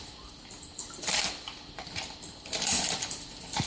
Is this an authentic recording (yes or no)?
no